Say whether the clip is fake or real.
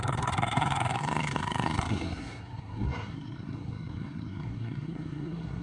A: fake